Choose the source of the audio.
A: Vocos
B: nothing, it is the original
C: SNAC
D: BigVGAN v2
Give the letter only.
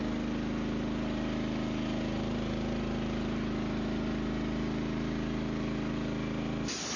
B